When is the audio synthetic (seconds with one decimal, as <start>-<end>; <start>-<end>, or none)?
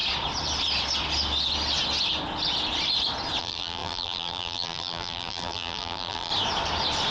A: 3.4-6.3